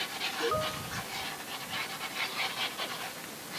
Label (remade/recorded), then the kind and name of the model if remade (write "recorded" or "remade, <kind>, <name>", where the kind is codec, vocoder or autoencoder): recorded